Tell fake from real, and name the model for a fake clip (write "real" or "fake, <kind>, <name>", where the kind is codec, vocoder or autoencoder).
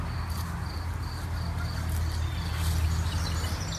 real